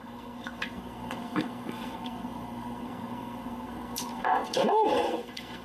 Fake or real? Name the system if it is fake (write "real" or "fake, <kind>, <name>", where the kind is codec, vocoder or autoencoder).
fake, codec, SNAC